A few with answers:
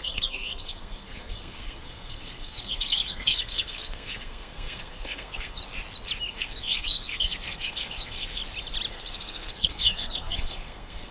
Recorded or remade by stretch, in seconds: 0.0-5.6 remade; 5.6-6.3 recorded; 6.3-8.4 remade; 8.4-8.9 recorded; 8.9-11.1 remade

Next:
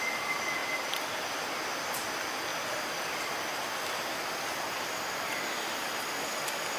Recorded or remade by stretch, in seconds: 0.0-6.8 recorded

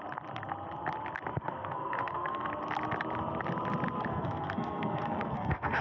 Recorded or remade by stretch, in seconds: 0.0-1.3 recorded; 1.3-2.5 remade; 2.5-4.1 recorded; 4.1-5.8 remade

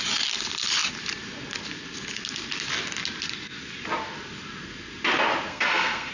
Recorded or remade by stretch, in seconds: 0.0-5.5 recorded; 5.5-6.1 remade

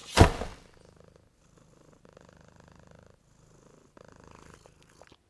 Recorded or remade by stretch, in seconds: 0.0-5.3 recorded

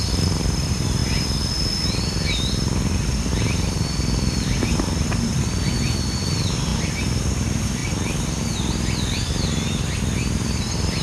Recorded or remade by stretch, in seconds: 0.0-11.0 recorded

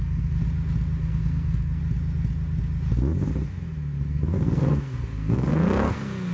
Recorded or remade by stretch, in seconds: 0.0-0.4 remade; 0.4-1.0 recorded; 1.0-1.8 remade; 1.8-4.1 recorded; 4.1-6.3 remade

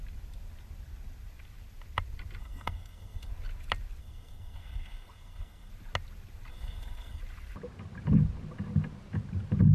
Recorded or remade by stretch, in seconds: 0.0-2.4 recorded; 2.4-3.3 remade; 3.3-4.0 recorded; 4.0-5.7 remade; 5.7-6.5 recorded; 6.5-7.2 remade; 7.2-9.7 recorded